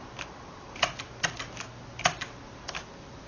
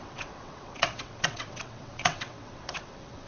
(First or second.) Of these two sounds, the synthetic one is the second